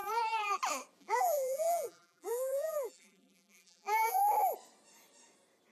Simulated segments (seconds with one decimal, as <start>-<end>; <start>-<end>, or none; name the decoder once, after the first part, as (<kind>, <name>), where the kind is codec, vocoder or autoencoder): 0.0-0.6 (vocoder, BigVGAN v2); 1.0-4.2